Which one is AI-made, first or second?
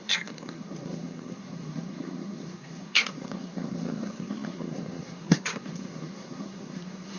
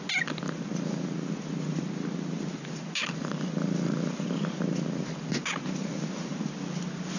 first